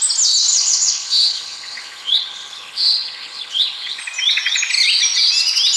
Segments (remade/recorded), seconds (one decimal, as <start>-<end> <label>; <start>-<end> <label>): 0.0-0.5 recorded; 0.5-4.0 remade; 4.0-5.8 recorded